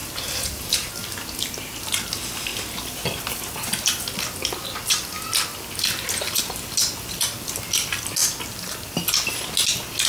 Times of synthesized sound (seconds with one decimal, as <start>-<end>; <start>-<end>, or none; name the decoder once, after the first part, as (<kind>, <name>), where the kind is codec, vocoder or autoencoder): 0.0-0.9 (vocoder, BigVGAN v2)